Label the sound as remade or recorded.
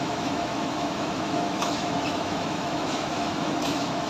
remade